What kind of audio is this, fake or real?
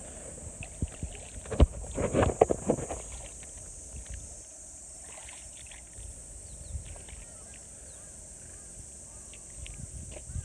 real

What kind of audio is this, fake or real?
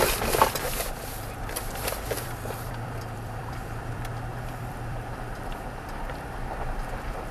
fake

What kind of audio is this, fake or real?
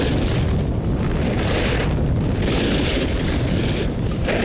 fake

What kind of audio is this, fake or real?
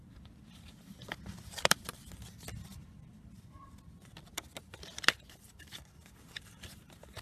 fake